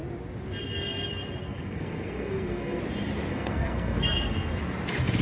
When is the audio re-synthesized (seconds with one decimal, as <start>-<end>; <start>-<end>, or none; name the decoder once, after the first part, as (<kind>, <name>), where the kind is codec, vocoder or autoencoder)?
1.4-2.8 (codec, SNAC); 3.3-4.5